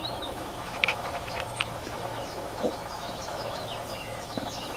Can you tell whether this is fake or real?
fake